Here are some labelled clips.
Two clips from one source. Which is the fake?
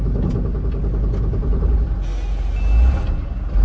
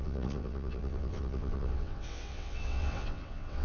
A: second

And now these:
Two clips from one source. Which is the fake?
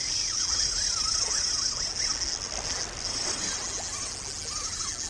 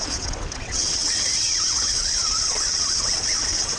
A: second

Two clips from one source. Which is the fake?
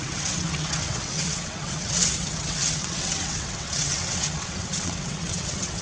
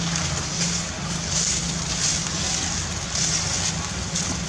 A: first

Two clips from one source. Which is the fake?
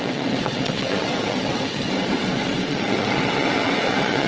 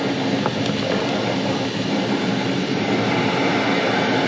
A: first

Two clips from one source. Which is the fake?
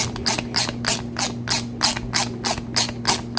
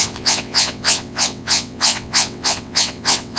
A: second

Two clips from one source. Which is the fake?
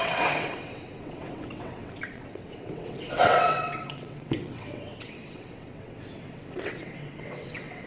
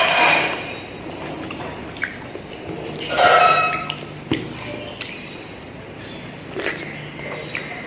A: first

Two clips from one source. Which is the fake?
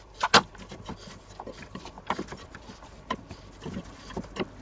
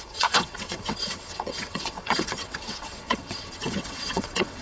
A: second